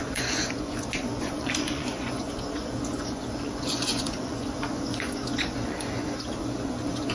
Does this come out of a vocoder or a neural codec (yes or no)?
yes